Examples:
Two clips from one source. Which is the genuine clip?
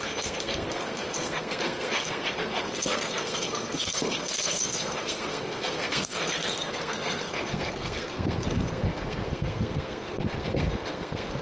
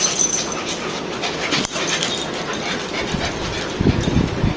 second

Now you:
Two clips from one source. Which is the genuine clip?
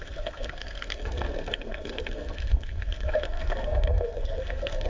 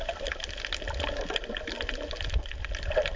second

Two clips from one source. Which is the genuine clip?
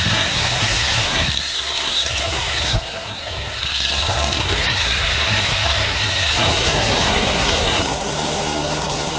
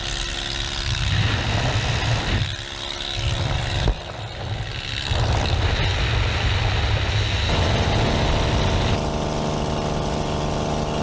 second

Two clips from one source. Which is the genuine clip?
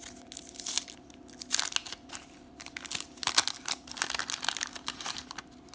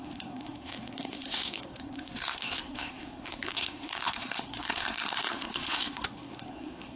first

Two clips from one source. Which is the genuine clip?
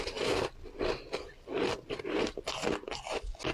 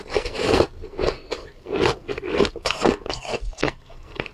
first